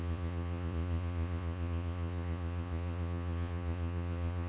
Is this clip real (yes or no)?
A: no